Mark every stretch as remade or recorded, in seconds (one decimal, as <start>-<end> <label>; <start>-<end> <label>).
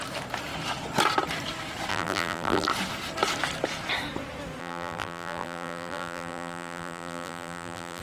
0.0-1.9 recorded; 1.9-2.7 remade; 2.7-4.6 recorded; 4.6-8.0 remade